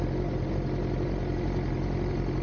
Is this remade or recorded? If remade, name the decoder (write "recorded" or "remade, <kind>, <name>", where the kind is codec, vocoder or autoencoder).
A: recorded